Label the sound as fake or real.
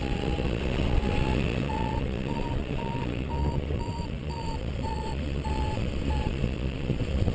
fake